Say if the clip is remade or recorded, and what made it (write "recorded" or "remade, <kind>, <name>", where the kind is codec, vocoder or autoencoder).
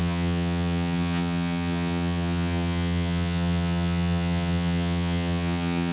remade, vocoder, HiFi-GAN